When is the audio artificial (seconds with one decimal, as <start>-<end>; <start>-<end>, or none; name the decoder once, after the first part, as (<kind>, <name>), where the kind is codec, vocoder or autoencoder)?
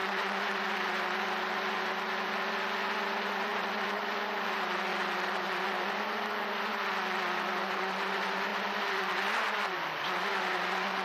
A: none